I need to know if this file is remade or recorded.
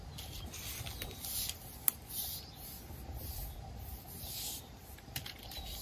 recorded